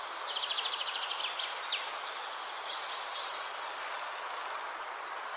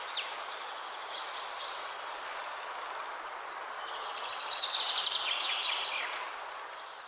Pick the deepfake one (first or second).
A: second